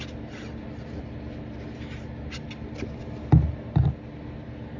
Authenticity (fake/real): real